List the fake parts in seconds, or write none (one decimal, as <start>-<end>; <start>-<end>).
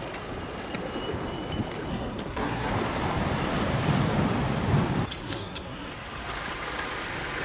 1.9-2.7; 5.2-5.9